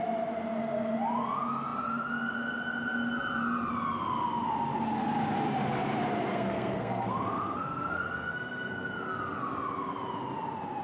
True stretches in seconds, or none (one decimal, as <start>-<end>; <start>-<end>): 0.0-6.3; 8.7-10.8